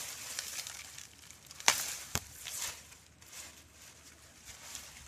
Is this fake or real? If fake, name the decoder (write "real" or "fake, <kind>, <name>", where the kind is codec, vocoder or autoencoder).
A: fake, vocoder, BigVGAN v2